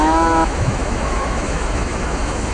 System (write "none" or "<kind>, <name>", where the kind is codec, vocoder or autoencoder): autoencoder, DAC-VAE